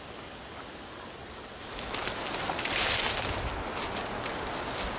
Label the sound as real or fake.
real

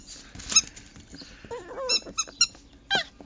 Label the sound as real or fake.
real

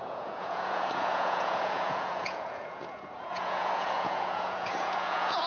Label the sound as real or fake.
fake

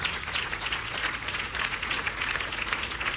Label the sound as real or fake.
fake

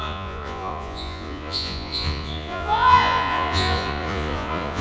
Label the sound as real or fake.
fake